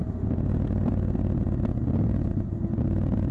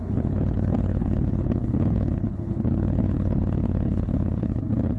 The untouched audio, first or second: first